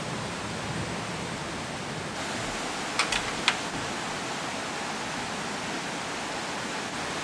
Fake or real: real